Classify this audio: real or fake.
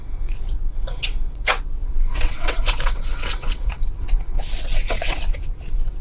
fake